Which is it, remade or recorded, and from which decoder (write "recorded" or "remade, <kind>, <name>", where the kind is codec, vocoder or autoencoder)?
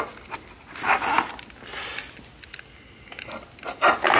recorded